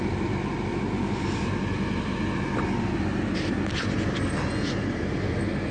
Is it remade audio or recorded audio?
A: recorded